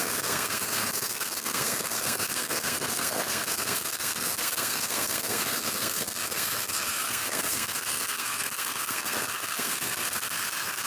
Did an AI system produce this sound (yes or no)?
yes